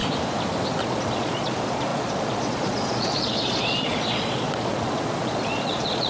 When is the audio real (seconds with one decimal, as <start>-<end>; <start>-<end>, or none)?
0.0-0.8